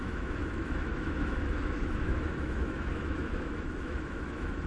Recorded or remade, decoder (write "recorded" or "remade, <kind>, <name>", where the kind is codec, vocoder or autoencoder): remade, autoencoder, DAC-VAE